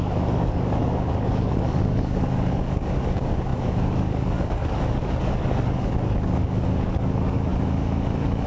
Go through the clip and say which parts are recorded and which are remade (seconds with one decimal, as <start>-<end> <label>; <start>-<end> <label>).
0.0-8.5 remade